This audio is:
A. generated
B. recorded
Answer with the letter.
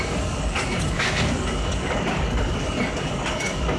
A